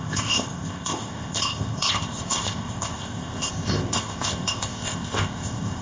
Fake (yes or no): yes